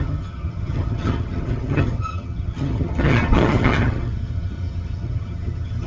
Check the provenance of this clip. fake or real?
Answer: fake